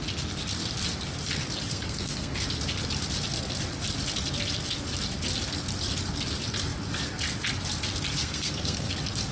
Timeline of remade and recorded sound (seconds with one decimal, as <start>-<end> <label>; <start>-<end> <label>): 0.0-1.7 recorded; 1.7-2.4 remade; 2.4-8.2 recorded; 8.2-8.9 remade; 8.9-9.3 recorded